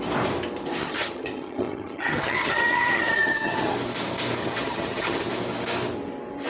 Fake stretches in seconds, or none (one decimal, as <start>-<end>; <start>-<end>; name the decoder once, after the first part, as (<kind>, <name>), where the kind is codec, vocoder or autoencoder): 0.8-3.7 (vocoder, HiFi-GAN); 4.4-5.3

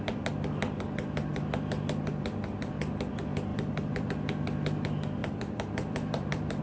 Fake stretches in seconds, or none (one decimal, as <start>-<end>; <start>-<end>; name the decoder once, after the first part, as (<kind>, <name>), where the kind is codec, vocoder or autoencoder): 3.5-4.1 (vocoder, BigVGAN v2); 5.2-6.6

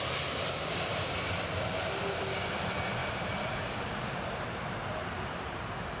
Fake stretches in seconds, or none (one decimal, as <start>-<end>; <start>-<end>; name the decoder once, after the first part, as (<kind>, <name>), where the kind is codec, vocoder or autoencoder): 3.0-5.5 (vocoder, BigVGAN v2)

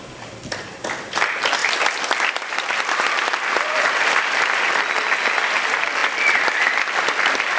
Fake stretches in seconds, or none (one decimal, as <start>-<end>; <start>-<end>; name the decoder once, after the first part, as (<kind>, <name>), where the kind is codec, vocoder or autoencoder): none

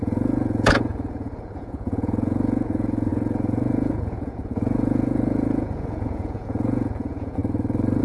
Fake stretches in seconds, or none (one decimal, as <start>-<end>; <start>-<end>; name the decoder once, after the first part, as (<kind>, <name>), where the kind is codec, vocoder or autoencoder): 0.0-7.4 (vocoder, Vocos)

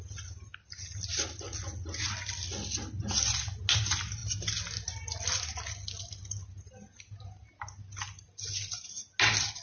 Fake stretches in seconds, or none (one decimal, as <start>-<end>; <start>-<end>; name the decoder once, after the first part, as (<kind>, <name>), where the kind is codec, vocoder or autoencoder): none

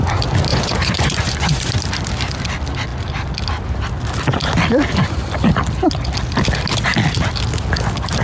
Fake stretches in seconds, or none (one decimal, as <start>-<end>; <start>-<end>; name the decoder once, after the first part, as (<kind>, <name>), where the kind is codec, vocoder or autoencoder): 0.5-1.7 (vocoder, Vocos)